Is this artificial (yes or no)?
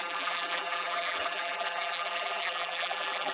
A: yes